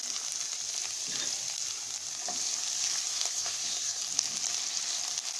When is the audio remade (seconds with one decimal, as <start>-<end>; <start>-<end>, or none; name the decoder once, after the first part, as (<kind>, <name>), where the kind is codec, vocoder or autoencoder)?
3.1-4.0 (codec, SNAC)